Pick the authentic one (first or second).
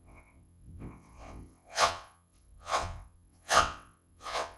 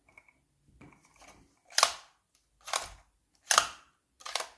second